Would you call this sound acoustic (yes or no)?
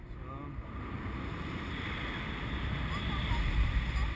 yes